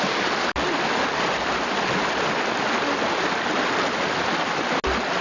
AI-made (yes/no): no